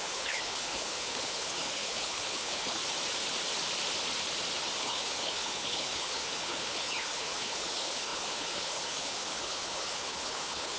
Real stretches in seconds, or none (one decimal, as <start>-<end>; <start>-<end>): 2.8-4.8